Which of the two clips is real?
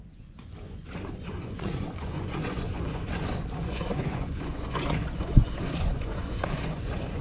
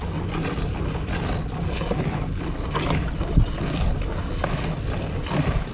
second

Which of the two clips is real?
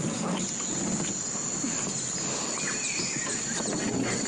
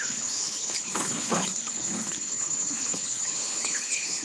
first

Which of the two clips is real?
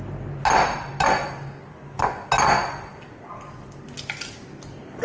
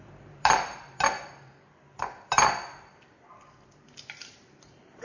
first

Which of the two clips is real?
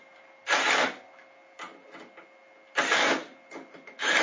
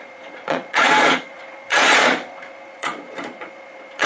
first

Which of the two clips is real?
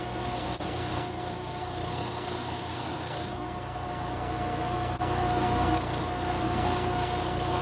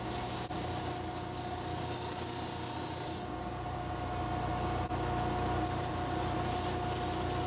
second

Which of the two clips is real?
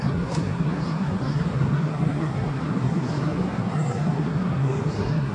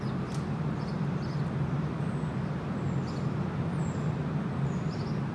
second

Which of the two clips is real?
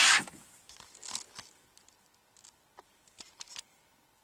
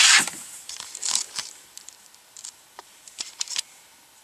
first